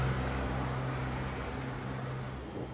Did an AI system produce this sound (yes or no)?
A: no